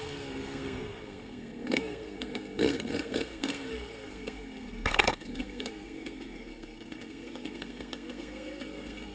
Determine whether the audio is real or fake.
fake